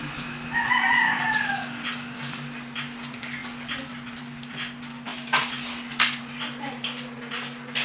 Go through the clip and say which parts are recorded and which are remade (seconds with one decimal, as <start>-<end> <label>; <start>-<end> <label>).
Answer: 0.0-7.8 recorded